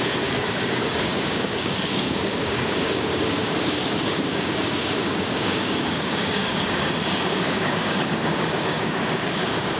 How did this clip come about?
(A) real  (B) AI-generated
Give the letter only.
B